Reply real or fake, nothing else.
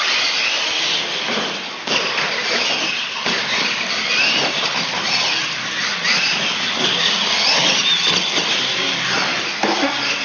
real